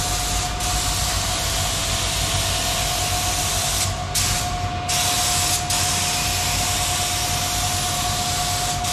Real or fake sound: real